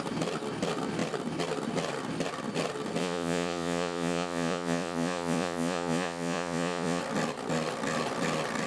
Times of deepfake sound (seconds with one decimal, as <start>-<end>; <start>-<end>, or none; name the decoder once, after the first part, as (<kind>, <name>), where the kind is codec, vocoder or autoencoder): 3.0-7.0 (vocoder, Vocos)